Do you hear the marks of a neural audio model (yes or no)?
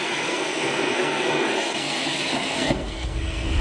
yes